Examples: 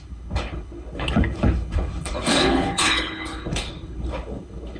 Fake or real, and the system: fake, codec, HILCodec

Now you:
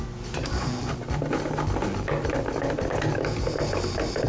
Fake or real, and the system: real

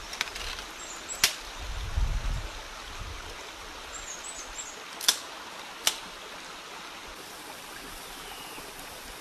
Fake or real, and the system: real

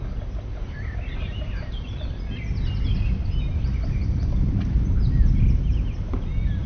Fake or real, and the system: real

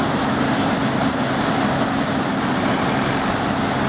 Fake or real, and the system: real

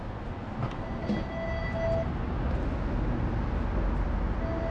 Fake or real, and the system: real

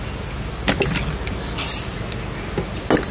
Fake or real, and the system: real